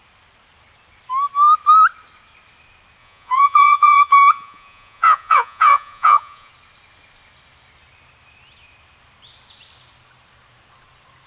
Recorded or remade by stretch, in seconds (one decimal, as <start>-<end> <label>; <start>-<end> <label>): 0.0-3.0 recorded; 3.0-6.5 remade; 6.5-11.3 recorded